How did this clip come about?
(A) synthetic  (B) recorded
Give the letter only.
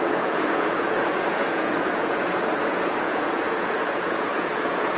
A